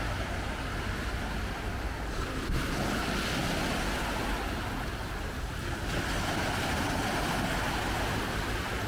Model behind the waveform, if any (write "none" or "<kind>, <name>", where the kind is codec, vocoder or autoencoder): none